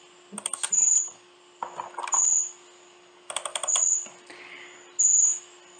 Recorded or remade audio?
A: recorded